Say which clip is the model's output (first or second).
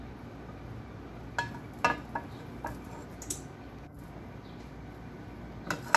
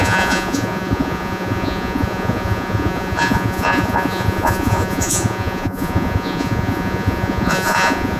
second